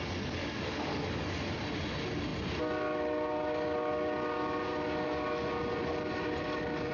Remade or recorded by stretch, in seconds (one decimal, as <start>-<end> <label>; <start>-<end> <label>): 0.0-0.4 recorded; 0.4-1.4 remade; 1.4-6.9 recorded